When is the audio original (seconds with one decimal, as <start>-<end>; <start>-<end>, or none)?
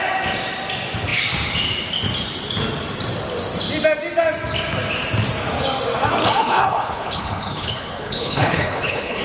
0.0-6.2